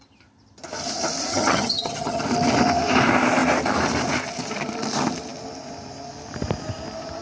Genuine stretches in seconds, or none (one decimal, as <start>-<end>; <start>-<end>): 0.0-1.3; 2.2-7.2